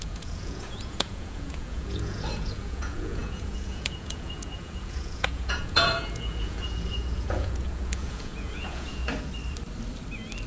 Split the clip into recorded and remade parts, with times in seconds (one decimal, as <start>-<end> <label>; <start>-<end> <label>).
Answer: 0.0-9.0 remade; 9.0-10.5 recorded